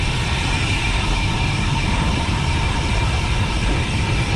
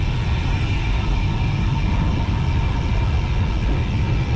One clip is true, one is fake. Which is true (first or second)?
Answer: second